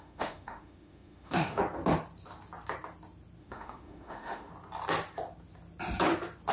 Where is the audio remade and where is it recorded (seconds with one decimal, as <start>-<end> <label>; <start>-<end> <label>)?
0.0-1.6 remade; 1.6-3.4 recorded; 3.4-4.5 remade; 4.5-6.5 recorded